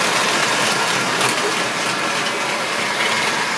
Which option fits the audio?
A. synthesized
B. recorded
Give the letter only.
B